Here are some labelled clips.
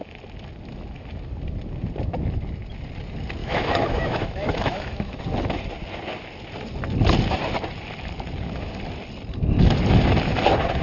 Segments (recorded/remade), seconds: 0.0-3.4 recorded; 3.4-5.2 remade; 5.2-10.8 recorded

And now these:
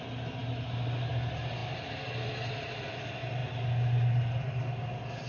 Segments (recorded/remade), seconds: 0.0-5.3 recorded

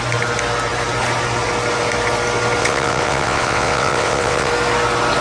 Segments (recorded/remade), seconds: 0.0-2.6 recorded; 2.6-4.5 remade; 4.5-5.2 recorded

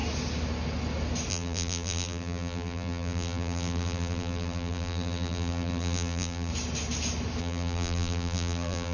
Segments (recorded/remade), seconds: 0.0-1.3 recorded; 1.3-6.5 remade; 6.5-7.4 recorded; 7.4-8.9 remade

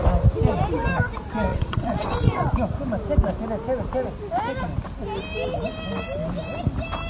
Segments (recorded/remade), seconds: 0.0-1.5 recorded; 1.5-2.5 remade; 2.5-7.1 recorded

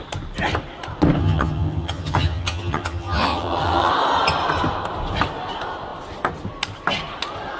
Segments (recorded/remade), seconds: 0.0-1.2 recorded; 1.2-3.9 remade; 3.9-7.6 recorded

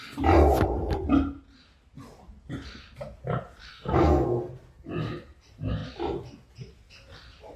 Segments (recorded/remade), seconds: 0.0-3.7 recorded; 3.7-4.5 remade; 4.5-7.6 recorded